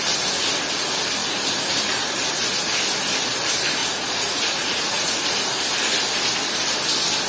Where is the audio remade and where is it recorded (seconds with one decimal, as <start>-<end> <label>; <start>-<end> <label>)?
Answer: 0.0-1.2 recorded; 1.2-1.9 remade; 1.9-3.8 recorded; 3.8-5.4 remade; 5.4-7.3 recorded